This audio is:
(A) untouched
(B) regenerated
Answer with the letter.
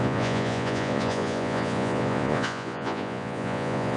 B